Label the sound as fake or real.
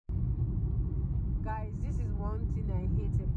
real